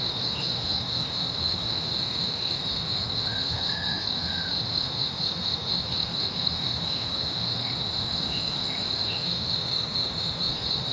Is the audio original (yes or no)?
no